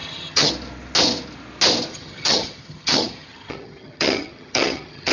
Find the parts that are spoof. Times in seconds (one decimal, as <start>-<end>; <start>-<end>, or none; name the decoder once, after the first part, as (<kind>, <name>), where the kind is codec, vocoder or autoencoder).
0.0-0.5 (vocoder, HiFi-GAN); 1.9-5.1